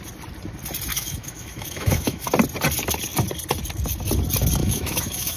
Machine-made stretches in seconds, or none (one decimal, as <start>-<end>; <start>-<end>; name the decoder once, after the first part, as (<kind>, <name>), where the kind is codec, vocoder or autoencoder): 0.9-2.3 (autoencoder, DAC-VAE); 4.6-5.4